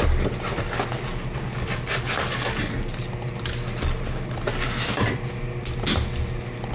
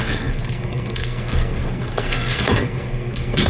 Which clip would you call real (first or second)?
first